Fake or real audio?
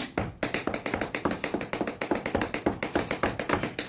real